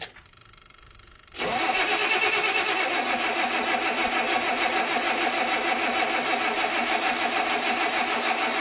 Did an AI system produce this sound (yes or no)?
no